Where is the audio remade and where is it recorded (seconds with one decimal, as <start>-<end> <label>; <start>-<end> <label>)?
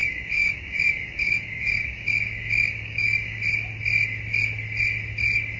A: 0.0-3.4 remade; 3.4-5.6 recorded